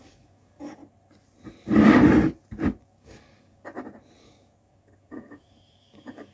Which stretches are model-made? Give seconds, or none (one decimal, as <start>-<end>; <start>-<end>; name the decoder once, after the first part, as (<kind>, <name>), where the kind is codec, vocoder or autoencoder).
0.0-0.8 (codec, DAC); 2.8-3.7; 4.2-6.3